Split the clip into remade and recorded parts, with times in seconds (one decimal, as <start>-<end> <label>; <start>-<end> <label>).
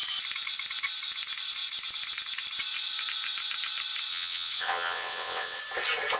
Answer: 0.0-4.1 recorded; 4.1-5.6 remade; 5.6-6.2 recorded